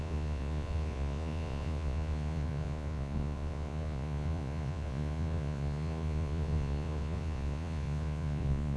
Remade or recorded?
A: remade